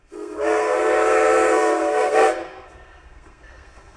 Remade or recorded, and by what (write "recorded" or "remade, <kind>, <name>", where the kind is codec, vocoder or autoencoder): remade, codec, SNAC